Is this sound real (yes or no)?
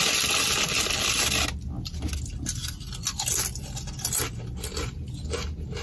yes